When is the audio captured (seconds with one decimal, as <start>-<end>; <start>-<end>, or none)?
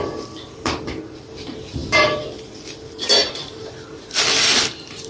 none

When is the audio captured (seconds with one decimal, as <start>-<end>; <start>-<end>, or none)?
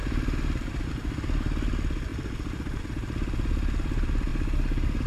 4.3-5.1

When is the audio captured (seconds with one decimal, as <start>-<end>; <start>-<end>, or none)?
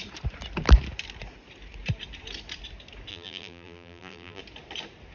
0.0-3.1; 4.4-5.1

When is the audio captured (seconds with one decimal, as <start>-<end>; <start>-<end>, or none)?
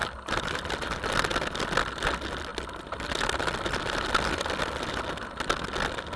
0.7-2.5; 5.1-6.2